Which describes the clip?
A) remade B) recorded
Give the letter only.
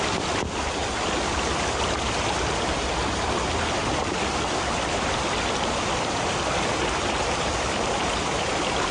B